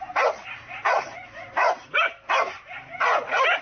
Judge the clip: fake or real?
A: fake